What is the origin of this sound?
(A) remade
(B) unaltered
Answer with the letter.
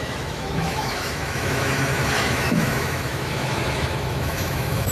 A